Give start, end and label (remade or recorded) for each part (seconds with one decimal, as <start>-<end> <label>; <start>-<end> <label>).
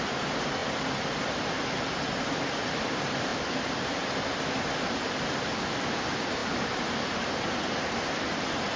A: 0.0-3.3 remade; 3.3-4.2 recorded; 4.2-6.4 remade; 6.4-8.4 recorded; 8.4-8.8 remade